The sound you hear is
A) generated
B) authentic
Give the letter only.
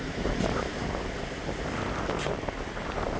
B